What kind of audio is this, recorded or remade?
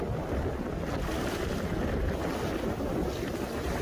recorded